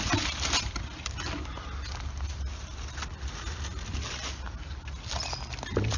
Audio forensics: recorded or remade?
recorded